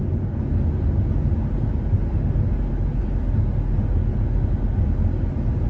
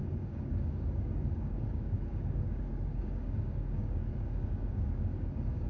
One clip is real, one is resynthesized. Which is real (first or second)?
first